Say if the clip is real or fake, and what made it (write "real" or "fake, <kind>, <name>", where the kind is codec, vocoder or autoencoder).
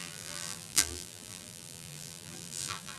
fake, vocoder, BigVGAN v2